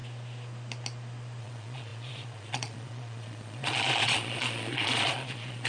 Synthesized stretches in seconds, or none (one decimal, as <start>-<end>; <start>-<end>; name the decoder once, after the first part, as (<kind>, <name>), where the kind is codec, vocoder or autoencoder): 1.4-5.7 (vocoder, Vocos)